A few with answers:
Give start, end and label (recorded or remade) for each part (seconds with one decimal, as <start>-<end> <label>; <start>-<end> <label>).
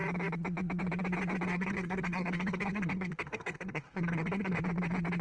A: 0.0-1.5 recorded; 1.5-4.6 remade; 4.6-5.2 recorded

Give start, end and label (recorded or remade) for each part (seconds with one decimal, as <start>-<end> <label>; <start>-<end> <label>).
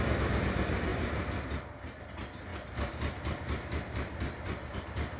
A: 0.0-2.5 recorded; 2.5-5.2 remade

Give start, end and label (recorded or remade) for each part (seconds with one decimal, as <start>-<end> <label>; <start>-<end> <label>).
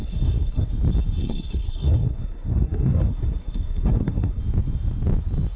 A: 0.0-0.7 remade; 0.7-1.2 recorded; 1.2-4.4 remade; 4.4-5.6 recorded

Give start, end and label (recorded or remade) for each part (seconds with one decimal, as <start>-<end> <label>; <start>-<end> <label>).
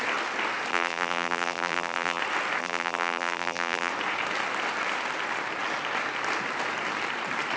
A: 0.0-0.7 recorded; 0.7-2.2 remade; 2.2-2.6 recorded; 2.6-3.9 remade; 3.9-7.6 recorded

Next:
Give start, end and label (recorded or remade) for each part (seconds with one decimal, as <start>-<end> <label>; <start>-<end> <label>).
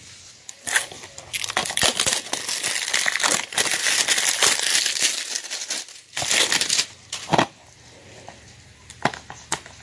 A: 0.0-9.8 recorded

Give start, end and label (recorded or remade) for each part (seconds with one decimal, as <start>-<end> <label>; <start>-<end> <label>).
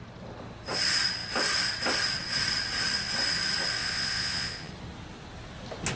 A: 0.0-3.8 recorded; 3.8-4.7 remade; 4.7-6.0 recorded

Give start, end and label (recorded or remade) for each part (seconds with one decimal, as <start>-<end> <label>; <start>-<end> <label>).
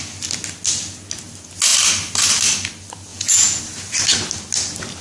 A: 0.0-3.1 recorded; 3.1-3.6 remade; 3.6-5.0 recorded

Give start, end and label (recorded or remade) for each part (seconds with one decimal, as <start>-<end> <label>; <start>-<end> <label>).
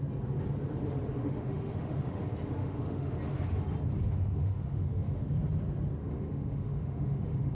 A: 0.0-1.2 recorded; 1.2-2.2 remade; 2.2-2.6 recorded; 2.6-3.2 remade; 3.2-4.0 recorded; 4.0-5.3 remade; 5.3-6.0 recorded; 6.0-7.5 remade